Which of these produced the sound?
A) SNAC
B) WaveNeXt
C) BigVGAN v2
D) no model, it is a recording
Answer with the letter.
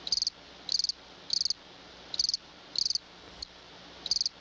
D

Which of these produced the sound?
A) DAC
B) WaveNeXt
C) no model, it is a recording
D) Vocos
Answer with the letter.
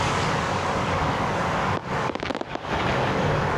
A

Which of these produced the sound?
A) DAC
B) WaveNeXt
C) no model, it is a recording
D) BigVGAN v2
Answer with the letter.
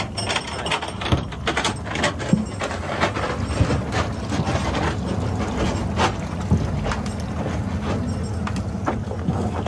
C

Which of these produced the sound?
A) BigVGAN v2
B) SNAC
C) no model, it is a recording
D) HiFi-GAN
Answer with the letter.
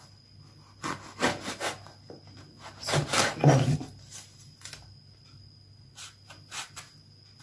C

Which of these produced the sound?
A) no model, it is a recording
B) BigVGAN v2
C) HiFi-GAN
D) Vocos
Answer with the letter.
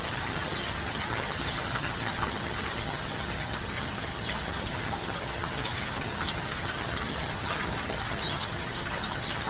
C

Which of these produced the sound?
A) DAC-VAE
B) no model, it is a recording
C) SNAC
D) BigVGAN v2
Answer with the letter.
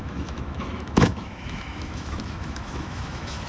A